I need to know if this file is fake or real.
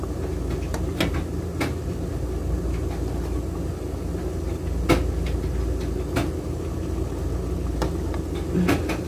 real